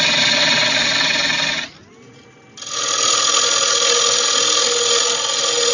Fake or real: real